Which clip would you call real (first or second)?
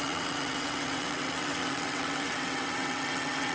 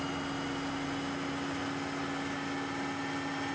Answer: second